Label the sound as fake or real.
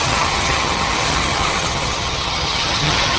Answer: fake